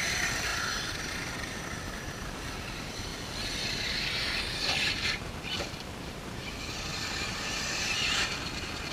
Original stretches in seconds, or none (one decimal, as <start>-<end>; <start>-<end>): 3.1-4.4; 6.9-7.4